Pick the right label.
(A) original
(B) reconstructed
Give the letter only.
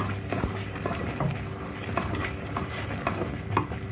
A